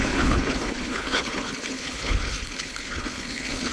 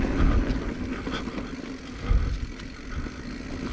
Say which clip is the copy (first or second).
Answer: first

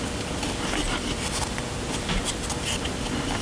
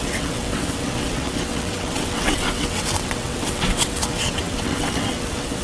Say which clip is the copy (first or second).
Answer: second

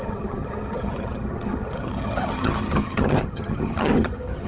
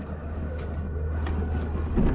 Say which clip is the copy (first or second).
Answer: first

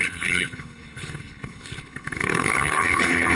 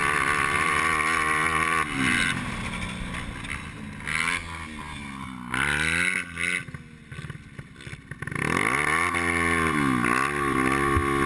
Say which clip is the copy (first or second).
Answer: first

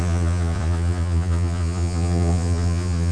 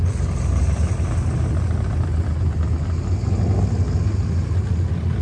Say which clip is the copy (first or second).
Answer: first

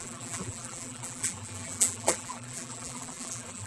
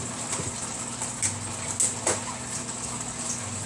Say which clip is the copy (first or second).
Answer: first